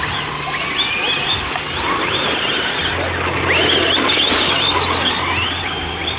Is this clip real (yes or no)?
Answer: yes